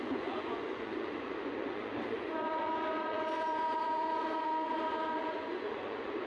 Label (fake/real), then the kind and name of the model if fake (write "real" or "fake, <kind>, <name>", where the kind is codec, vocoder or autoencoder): fake, vocoder, Vocos